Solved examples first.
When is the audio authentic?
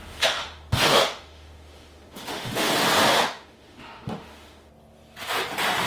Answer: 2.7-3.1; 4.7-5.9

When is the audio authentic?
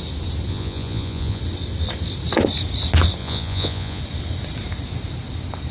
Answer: 0.0-0.5; 1.4-3.2; 4.0-5.7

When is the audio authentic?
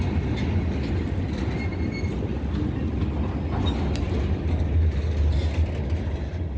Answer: 0.0-6.6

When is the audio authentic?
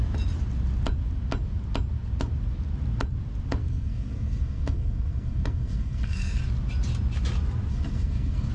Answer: 0.0-3.6; 6.4-7.7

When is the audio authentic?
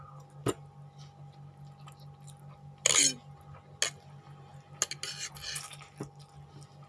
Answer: 0.0-6.9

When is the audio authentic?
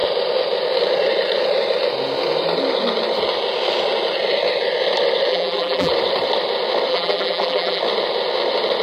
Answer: 0.0-5.3; 5.9-6.9; 7.8-8.8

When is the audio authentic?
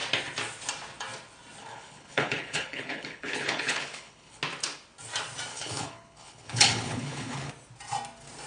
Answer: 0.0-1.6; 4.4-5.5; 7.5-8.5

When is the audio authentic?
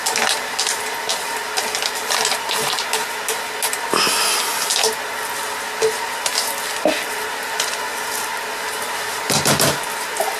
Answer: 0.0-10.4